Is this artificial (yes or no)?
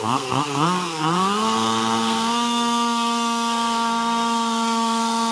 yes